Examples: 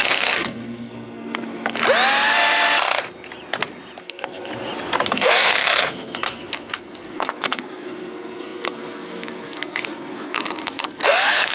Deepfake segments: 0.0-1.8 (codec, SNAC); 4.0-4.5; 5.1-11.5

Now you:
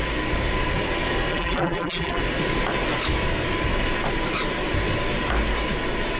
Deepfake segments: 1.3-2.2 (vocoder, BigVGAN v2)

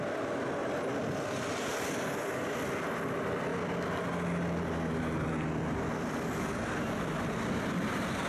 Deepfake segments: none

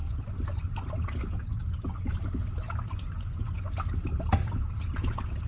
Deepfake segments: 0.0-0.8 (vocoder, Vocos); 2.9-3.7

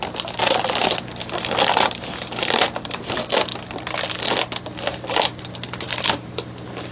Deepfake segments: none

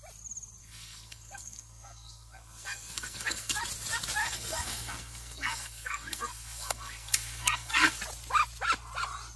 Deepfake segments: 0.6-3.6 (codec, SNAC); 4.2-8.0

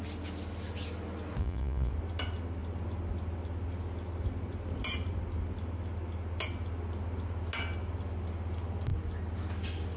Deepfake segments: 1.4-1.9 (vocoder, Vocos)